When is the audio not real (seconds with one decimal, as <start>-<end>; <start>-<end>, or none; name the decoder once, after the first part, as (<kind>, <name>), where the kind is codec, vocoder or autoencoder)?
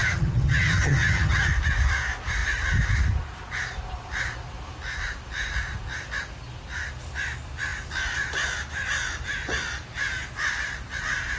0.0-1.5 (vocoder, HiFi-GAN)